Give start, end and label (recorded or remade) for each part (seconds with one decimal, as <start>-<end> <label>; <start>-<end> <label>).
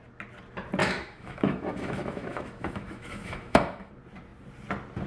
0.0-0.8 recorded; 0.8-3.9 remade; 3.9-5.1 recorded